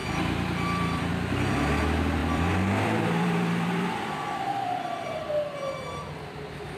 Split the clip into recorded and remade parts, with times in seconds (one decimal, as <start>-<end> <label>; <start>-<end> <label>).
0.0-1.1 remade; 1.1-2.2 recorded; 2.2-5.4 remade; 5.4-6.8 recorded